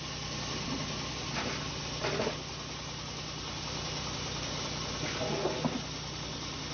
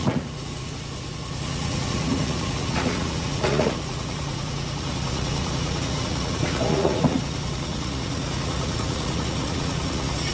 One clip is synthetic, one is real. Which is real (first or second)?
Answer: first